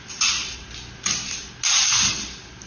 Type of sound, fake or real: real